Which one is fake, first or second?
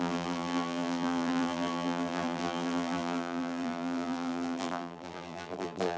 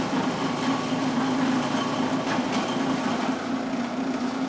first